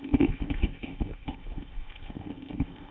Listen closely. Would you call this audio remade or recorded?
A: remade